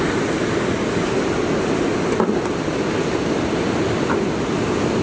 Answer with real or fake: real